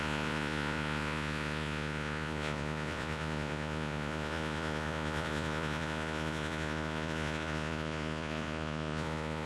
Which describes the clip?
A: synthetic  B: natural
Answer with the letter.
A